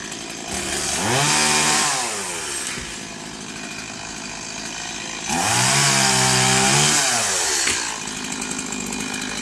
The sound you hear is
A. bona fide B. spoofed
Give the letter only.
A